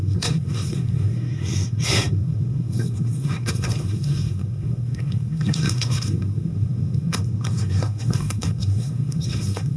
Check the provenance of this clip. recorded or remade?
remade